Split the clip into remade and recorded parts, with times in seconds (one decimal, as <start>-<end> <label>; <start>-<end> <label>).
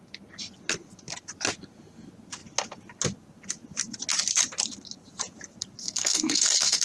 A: 0.0-5.8 recorded; 5.8-6.8 remade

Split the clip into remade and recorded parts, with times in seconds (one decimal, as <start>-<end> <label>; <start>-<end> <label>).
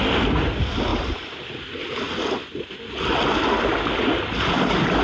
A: 0.0-5.0 recorded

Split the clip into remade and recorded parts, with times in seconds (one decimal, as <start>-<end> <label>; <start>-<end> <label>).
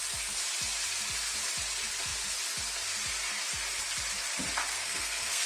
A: 0.0-4.7 recorded; 4.7-5.5 remade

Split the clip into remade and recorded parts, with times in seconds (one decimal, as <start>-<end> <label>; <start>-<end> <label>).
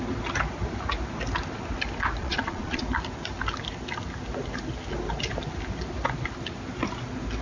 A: 0.0-2.2 recorded; 2.2-2.8 remade; 2.8-7.4 recorded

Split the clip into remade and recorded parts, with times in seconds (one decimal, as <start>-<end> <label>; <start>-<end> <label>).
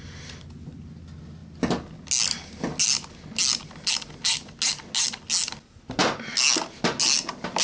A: 0.0-7.6 recorded